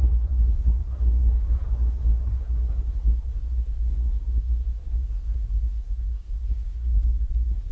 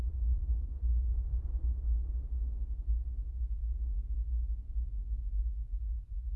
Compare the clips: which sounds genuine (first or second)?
second